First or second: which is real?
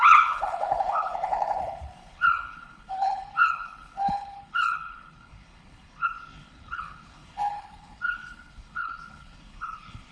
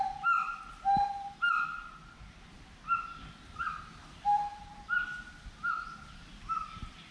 second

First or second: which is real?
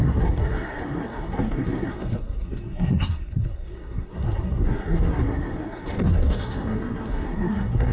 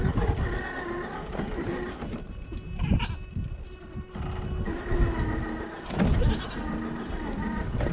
second